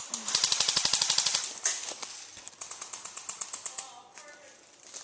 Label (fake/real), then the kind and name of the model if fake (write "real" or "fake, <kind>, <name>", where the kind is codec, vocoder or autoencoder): real